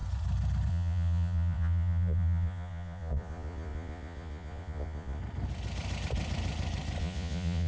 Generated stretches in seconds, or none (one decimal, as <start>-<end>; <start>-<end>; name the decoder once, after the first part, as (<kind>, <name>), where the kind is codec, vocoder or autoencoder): 0.7-5.2 (vocoder, Vocos); 7.0-7.7